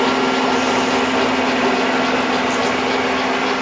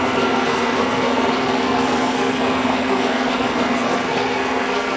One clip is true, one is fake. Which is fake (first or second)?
second